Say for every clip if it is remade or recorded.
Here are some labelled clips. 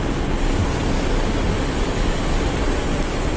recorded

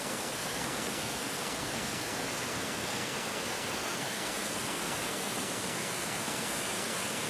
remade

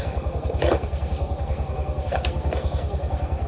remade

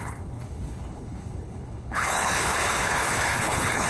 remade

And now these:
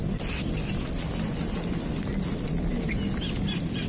recorded